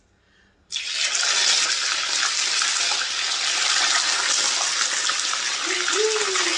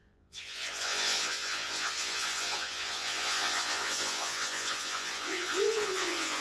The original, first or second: first